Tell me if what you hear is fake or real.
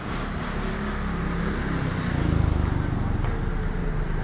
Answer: real